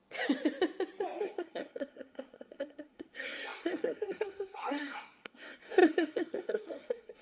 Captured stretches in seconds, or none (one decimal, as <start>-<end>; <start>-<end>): 0.0-1.2